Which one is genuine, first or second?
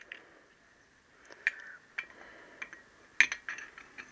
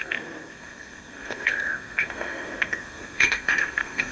first